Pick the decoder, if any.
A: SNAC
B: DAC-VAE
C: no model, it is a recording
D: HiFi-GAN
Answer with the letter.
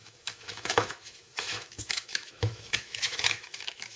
B